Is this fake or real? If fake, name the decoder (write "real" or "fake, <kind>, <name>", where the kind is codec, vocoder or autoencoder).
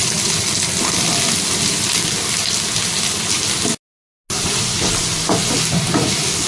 real